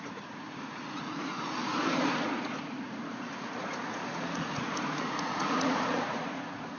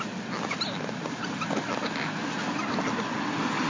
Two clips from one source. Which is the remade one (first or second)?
first